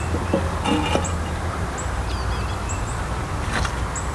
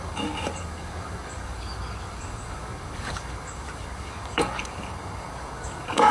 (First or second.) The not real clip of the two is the second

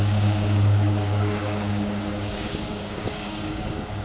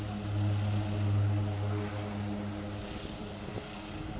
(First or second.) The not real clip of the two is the first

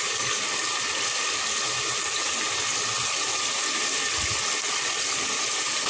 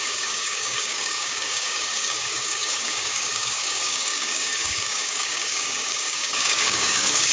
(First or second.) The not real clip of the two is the second